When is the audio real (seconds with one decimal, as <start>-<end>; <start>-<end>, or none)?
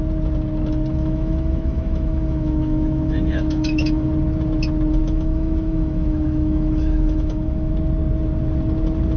0.0-0.9; 4.1-5.0; 7.7-9.2